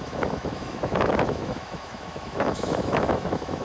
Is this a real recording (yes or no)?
no